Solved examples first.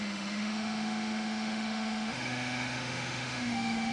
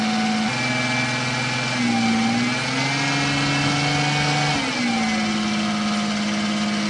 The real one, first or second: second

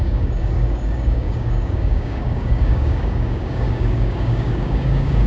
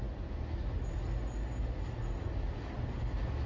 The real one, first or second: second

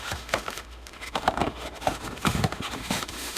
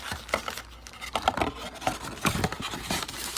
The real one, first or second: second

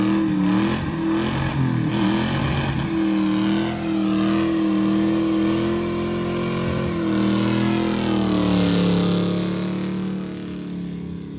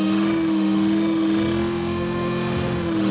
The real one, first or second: first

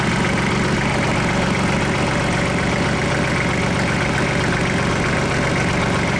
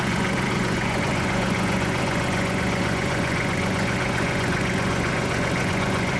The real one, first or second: first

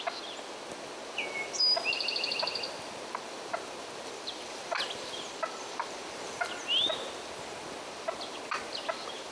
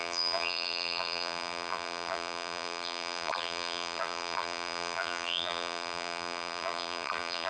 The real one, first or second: first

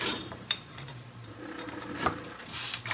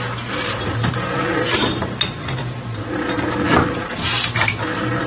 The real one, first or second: second